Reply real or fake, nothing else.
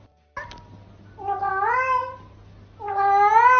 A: real